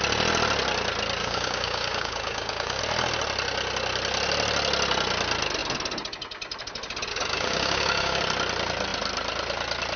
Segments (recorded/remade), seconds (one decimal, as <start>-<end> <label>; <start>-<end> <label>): 0.0-1.2 recorded; 1.2-2.8 remade; 2.8-7.1 recorded; 7.1-8.2 remade; 8.2-10.0 recorded